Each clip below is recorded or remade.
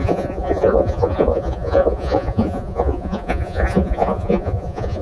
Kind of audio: remade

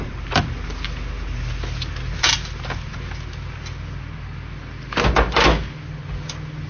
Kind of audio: recorded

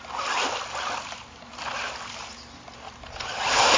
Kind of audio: recorded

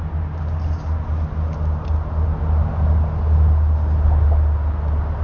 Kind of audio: recorded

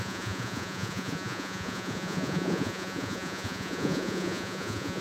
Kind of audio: remade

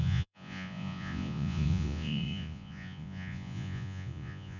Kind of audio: remade